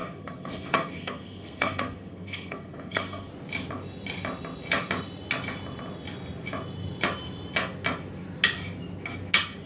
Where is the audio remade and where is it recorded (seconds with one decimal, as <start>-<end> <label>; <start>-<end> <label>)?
0.0-3.3 remade; 3.3-9.7 recorded